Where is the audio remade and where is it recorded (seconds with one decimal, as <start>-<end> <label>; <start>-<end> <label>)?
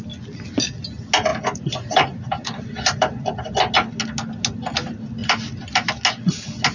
0.0-1.3 recorded; 1.3-3.5 remade; 3.5-5.2 recorded; 5.2-5.9 remade; 5.9-6.7 recorded